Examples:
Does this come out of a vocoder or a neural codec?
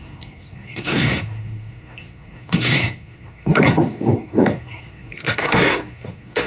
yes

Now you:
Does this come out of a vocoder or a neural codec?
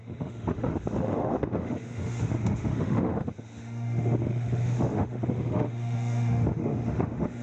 yes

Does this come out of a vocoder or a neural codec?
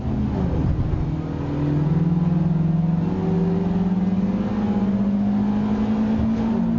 no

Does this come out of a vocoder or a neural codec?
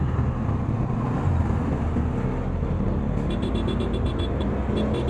no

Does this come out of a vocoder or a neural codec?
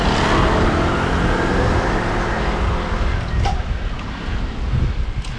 no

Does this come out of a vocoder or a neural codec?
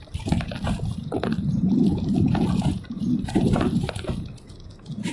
yes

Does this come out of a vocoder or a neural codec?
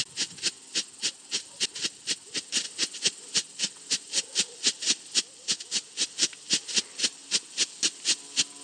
no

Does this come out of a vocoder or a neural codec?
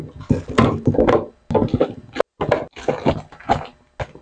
no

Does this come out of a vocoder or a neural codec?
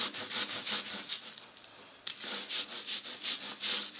no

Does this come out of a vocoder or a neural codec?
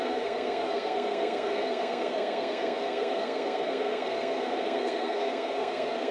yes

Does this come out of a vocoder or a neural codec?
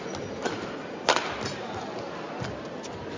no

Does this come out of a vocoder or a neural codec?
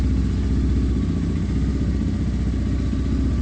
no